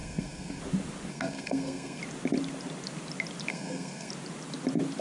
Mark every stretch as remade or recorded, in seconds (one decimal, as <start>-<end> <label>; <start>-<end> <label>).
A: 0.0-0.6 remade; 0.6-1.1 recorded; 1.1-2.0 remade; 2.0-3.5 recorded; 3.5-4.1 remade; 4.1-5.0 recorded